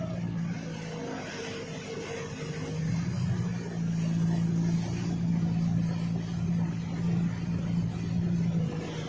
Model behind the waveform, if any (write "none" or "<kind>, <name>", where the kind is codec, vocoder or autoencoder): none